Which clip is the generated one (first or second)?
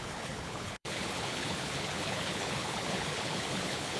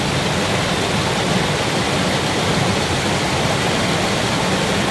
first